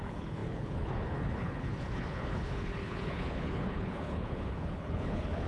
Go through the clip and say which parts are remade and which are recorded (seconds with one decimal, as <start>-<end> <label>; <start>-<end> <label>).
0.0-5.5 remade